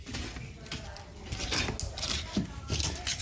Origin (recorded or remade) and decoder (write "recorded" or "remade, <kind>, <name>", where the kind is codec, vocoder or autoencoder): recorded